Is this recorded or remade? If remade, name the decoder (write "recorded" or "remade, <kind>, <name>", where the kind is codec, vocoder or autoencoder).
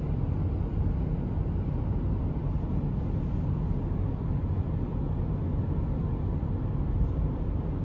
recorded